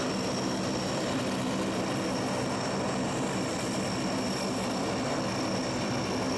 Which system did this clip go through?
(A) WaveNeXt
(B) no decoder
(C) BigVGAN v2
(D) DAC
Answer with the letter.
B